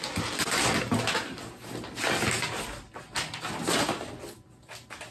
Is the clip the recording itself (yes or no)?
yes